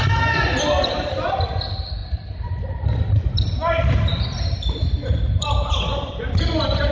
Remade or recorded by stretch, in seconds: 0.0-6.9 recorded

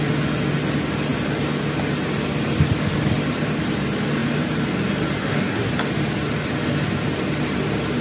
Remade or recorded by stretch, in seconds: 0.0-5.2 recorded; 5.2-5.7 remade; 5.7-8.0 recorded

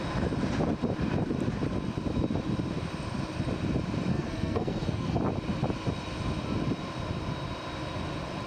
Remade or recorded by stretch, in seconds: 0.0-4.1 recorded; 4.1-5.2 remade; 5.2-8.5 recorded

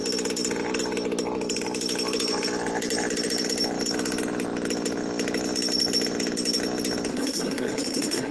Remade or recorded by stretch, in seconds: 0.0-7.1 recorded; 7.1-8.3 remade